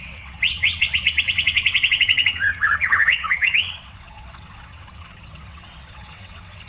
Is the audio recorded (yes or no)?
no